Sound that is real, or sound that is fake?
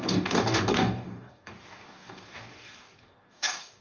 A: fake